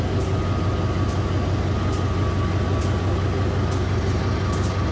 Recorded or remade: recorded